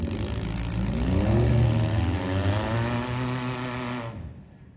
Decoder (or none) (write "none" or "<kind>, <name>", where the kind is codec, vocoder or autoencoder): none